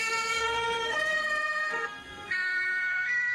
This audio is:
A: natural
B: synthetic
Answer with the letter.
B